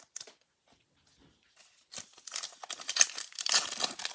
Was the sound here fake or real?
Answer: real